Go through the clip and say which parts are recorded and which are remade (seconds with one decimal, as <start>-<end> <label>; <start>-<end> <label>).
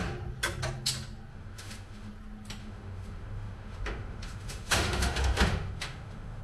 0.0-1.3 recorded; 1.3-2.1 remade; 2.1-2.6 recorded; 2.6-6.4 remade